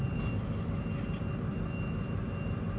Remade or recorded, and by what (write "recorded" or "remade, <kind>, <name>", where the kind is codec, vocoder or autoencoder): recorded